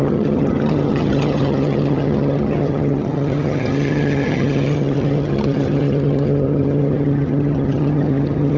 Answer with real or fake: fake